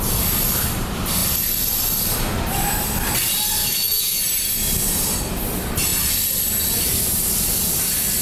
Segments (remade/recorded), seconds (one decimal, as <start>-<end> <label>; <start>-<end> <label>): 0.0-3.6 recorded; 3.6-4.2 remade; 4.2-8.2 recorded